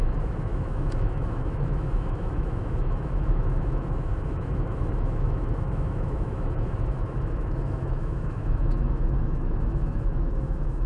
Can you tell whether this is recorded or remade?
remade